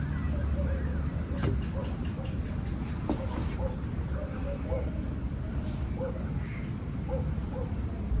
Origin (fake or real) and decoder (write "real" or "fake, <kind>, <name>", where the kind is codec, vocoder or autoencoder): real